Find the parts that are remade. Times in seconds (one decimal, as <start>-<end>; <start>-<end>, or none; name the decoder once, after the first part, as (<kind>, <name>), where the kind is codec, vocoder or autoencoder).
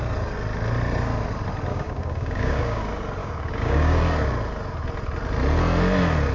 1.7-2.8 (codec, DAC); 3.2-4.0